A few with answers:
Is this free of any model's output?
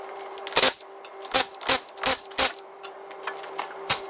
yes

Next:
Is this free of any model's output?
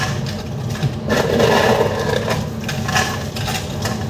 yes